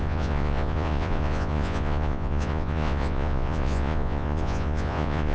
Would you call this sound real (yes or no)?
no